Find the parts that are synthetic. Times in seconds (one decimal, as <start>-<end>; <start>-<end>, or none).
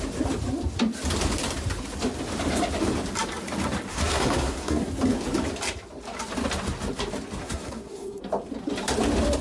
3.9-4.9; 7.4-8.2